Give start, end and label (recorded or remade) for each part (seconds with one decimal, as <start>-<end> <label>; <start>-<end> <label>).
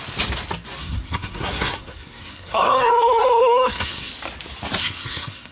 0.0-0.8 recorded; 0.8-4.1 remade; 4.1-4.8 recorded; 4.8-5.5 remade